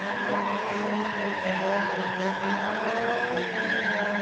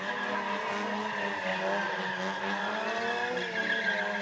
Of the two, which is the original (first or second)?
second